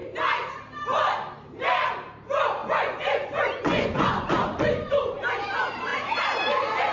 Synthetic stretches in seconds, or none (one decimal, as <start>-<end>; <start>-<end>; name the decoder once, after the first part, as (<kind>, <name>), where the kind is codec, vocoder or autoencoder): 2.6-4.6 (vocoder, Vocos)